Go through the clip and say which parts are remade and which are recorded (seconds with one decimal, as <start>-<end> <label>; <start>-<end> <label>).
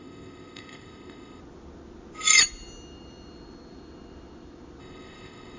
0.0-1.4 remade; 1.4-4.8 recorded; 4.8-5.6 remade